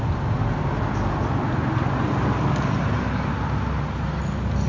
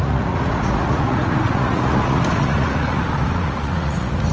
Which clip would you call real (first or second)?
first